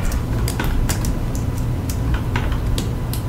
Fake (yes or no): no